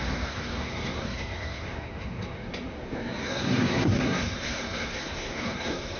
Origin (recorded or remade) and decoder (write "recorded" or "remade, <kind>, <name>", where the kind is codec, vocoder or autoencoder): remade, codec, SNAC